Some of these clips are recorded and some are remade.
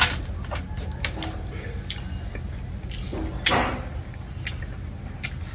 recorded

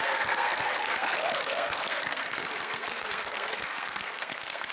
remade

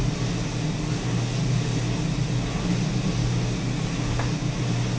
recorded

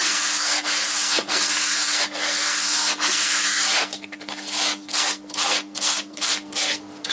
remade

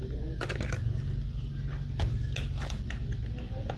recorded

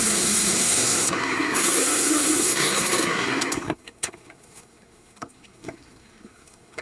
remade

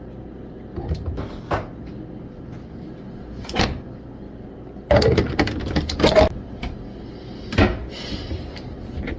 recorded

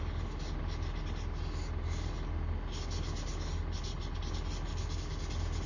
recorded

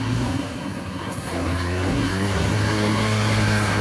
remade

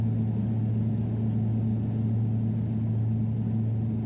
recorded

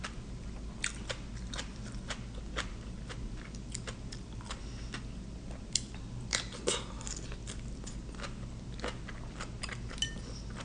recorded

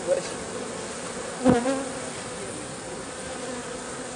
recorded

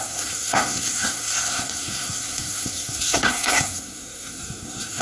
remade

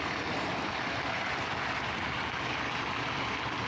recorded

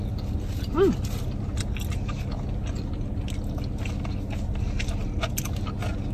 recorded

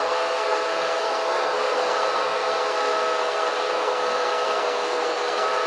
remade